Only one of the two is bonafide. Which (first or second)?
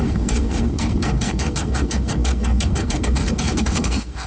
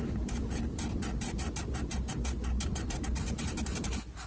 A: second